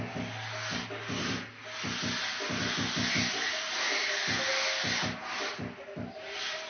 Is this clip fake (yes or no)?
no